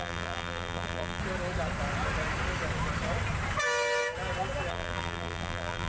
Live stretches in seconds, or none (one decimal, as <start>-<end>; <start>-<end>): 1.2-4.7